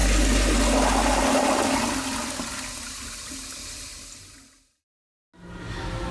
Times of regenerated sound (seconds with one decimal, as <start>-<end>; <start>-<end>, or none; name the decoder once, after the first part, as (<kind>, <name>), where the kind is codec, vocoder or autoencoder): none